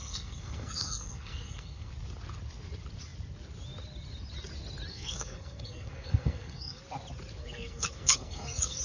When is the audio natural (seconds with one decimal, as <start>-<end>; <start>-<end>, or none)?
1.9-4.9; 6.8-7.4